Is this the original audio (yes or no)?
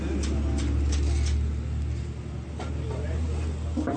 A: yes